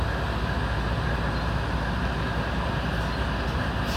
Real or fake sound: real